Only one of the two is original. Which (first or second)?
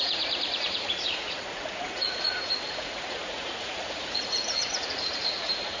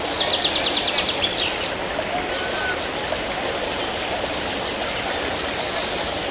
second